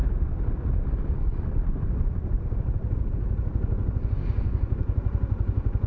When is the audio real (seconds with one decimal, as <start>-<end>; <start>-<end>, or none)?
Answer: 3.1-5.9